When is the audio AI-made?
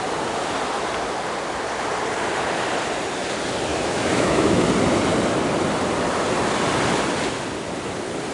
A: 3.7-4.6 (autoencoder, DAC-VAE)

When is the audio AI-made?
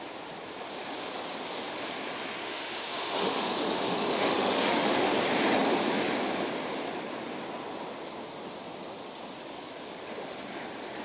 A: 2.4-5.1 (autoencoder, DAC-VAE)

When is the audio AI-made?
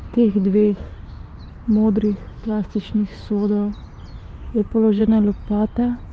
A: 0.0-1.4 (autoencoder, DAC-VAE); 2.3-3.7; 4.2-5.0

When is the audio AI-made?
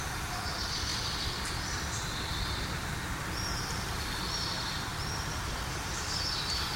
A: none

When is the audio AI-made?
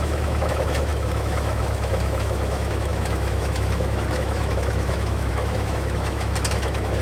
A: 0.0-7.0 (autoencoder, DAC-VAE)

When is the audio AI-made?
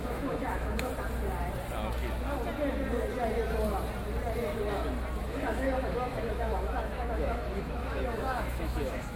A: 0.0-0.9 (autoencoder, DAC-VAE); 5.2-9.2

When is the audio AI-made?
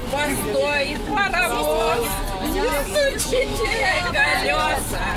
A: 0.6-1.1 (autoencoder, DAC-VAE); 3.2-4.3